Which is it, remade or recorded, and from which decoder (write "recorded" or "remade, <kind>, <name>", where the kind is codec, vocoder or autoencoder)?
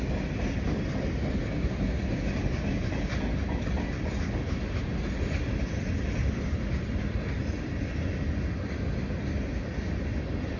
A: recorded